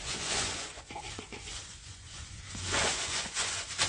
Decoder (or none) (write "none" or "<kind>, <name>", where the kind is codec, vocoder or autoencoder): vocoder, Vocos